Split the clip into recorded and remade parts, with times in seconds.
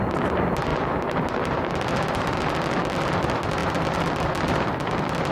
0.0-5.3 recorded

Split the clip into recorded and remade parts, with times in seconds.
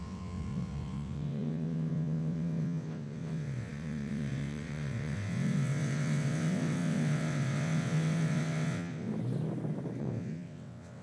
0.0-9.1 remade; 9.1-10.0 recorded; 10.0-11.0 remade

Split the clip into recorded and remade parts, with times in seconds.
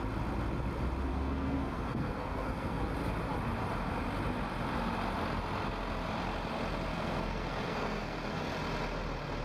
0.0-1.1 recorded; 1.1-2.8 remade; 2.8-6.9 recorded; 6.9-8.4 remade; 8.4-9.4 recorded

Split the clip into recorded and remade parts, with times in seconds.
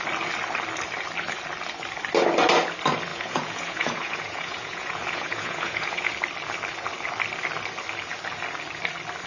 0.0-3.1 recorded; 3.1-6.1 remade; 6.1-9.3 recorded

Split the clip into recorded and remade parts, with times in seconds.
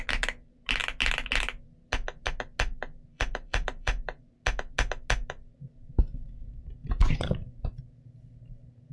0.0-3.1 recorded; 3.1-4.3 remade; 4.3-6.8 recorded; 6.8-7.8 remade; 7.8-8.9 recorded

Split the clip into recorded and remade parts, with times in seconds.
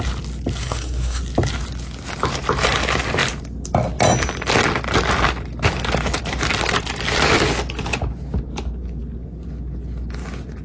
0.0-0.6 recorded; 0.6-1.2 remade; 1.2-10.6 recorded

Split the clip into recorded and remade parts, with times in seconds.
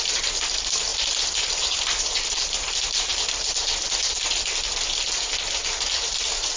0.0-0.9 recorded; 0.9-2.0 remade; 2.0-6.6 recorded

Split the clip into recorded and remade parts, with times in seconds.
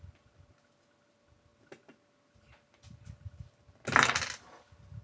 0.0-5.0 recorded